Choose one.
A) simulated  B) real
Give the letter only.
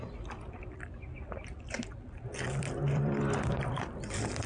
A